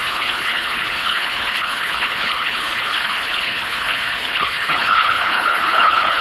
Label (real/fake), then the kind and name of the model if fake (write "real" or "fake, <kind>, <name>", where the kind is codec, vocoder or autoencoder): fake, codec, HILCodec